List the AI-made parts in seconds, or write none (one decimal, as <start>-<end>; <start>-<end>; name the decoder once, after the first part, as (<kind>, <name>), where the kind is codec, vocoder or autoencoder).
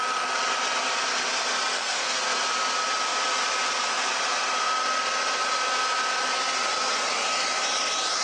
1.7-2.2 (codec, SNAC)